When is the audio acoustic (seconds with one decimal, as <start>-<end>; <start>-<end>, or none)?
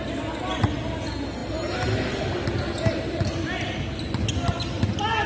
0.0-5.3